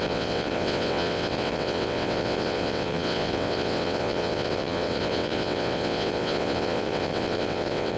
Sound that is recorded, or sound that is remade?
remade